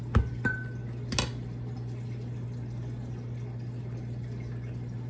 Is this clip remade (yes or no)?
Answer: no